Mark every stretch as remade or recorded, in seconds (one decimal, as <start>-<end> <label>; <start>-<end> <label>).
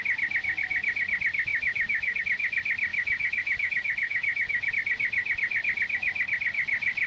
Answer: 0.0-1.5 recorded; 1.5-2.2 remade; 2.2-2.9 recorded; 2.9-4.7 remade; 4.7-7.1 recorded